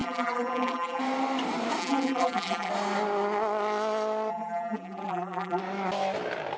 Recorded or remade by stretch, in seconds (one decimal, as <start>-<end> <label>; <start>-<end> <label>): 0.0-1.0 remade; 1.0-1.8 recorded; 1.8-2.7 remade; 2.7-4.3 recorded; 4.3-5.6 remade; 5.6-6.6 recorded